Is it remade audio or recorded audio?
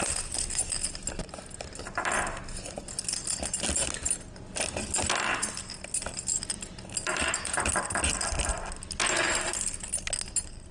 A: recorded